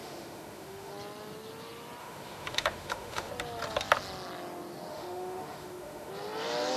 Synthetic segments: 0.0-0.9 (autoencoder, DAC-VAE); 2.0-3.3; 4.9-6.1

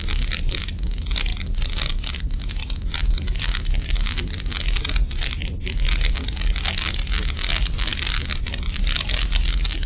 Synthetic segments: 0.0-0.6 (vocoder, BigVGAN v2); 1.3-2.2